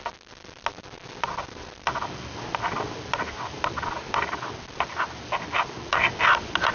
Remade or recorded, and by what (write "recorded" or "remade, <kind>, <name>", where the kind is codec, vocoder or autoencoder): recorded